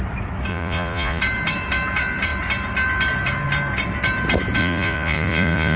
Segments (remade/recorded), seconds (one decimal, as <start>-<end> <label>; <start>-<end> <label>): 0.0-0.5 recorded; 0.5-1.2 remade; 1.2-4.6 recorded; 4.6-5.8 remade